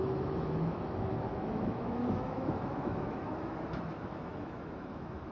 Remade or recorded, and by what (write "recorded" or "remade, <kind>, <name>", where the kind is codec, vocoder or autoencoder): remade, autoencoder, DAC-VAE